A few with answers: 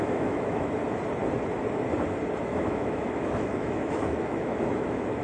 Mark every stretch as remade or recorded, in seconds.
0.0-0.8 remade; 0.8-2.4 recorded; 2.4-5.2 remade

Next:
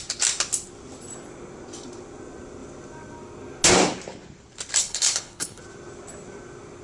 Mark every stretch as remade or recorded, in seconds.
0.0-4.8 recorded; 4.8-5.6 remade; 5.6-6.8 recorded